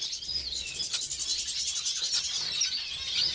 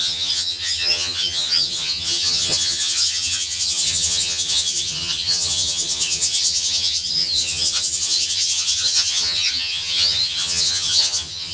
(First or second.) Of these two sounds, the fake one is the second